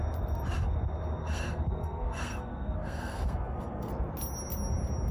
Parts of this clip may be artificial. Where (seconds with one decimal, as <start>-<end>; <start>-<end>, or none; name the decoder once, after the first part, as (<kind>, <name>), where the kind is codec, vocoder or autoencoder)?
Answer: 1.2-3.9 (codec, SNAC)